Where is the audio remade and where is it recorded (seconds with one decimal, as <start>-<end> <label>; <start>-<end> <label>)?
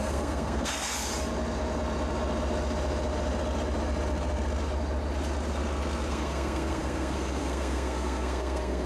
0.0-1.1 remade; 1.1-6.1 recorded; 6.1-8.9 remade